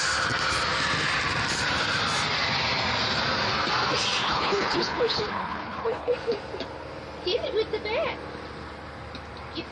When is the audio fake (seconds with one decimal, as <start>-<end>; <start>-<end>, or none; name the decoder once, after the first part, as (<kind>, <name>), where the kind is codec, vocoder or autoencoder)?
4.2-6.1 (codec, HILCodec)